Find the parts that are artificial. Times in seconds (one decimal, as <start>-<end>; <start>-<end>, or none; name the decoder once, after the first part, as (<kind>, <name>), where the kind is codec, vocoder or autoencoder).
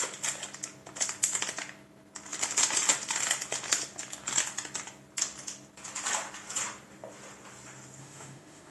8.0-8.7 (autoencoder, DAC-VAE)